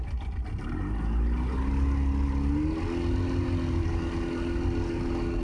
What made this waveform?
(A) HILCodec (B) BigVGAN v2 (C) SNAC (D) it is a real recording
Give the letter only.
D